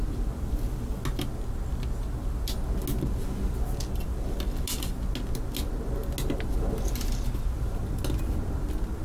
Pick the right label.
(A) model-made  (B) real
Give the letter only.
B